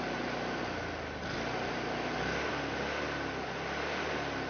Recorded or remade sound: recorded